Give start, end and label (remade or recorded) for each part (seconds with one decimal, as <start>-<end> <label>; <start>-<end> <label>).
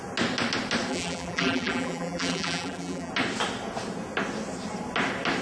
0.0-0.9 recorded; 0.9-3.1 remade; 3.1-5.4 recorded